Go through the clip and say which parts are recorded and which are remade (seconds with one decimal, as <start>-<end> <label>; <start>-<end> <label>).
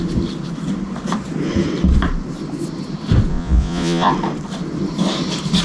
0.0-3.3 recorded; 3.3-4.1 remade; 4.1-5.6 recorded